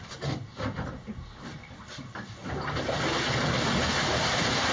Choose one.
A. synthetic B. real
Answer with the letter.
B